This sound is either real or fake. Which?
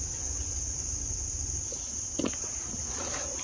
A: real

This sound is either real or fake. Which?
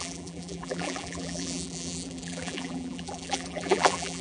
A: fake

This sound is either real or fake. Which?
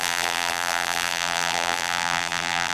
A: fake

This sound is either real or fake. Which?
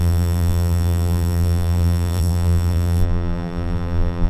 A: fake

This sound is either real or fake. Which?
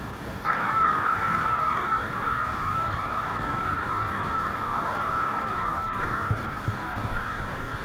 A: fake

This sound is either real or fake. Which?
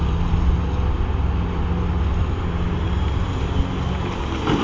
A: real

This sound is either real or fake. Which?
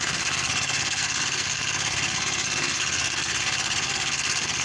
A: fake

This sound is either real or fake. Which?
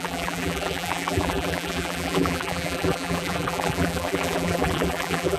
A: fake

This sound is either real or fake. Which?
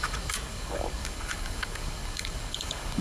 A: fake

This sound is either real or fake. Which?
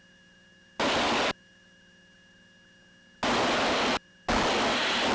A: real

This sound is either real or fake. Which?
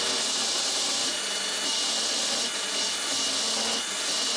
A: real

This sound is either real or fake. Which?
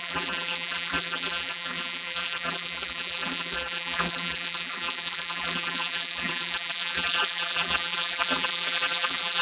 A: fake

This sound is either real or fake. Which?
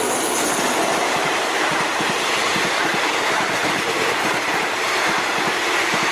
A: real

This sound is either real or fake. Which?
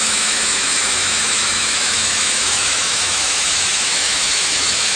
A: fake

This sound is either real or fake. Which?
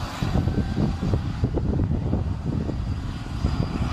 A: real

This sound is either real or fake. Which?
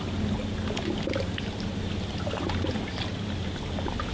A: real